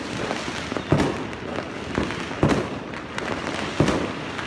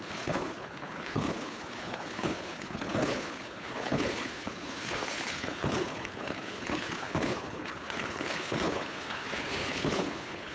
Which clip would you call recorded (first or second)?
first